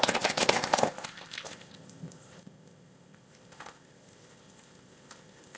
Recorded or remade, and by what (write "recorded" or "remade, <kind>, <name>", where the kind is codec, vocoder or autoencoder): remade, codec, ZipCodec